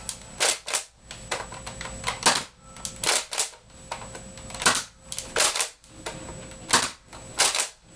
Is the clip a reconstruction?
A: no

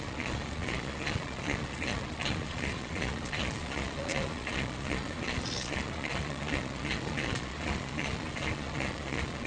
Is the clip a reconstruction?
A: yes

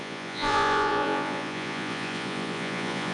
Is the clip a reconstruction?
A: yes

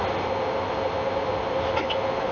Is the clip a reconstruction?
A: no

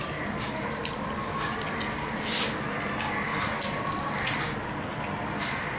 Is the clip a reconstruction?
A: no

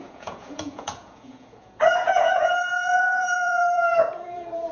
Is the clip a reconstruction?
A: yes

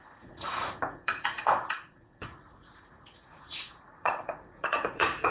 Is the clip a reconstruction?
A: yes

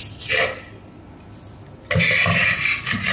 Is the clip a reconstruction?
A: no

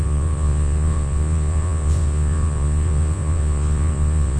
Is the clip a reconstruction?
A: yes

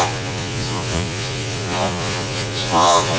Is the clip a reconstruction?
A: yes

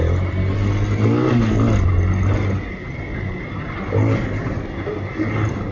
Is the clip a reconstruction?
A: no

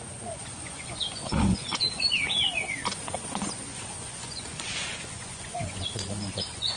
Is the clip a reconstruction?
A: yes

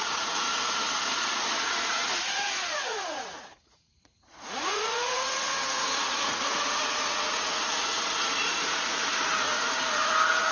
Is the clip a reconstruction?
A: yes